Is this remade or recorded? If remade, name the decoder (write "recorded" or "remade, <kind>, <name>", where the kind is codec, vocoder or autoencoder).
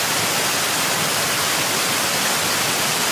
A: recorded